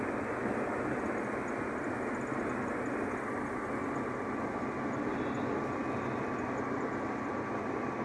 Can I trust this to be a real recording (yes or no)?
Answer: yes